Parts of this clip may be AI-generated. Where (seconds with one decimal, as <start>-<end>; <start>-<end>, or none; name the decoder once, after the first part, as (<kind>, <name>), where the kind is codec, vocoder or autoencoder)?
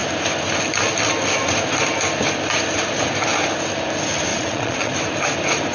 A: 4.3-4.9 (vocoder, Vocos)